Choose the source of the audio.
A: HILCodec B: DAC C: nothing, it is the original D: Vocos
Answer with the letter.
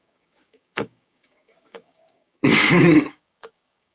B